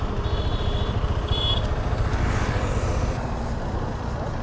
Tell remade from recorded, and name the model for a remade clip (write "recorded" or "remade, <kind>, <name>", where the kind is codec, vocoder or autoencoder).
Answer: recorded